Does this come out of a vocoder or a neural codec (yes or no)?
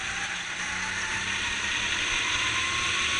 no